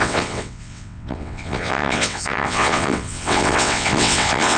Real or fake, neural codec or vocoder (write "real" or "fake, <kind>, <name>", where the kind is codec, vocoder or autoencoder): fake, vocoder, WaveNeXt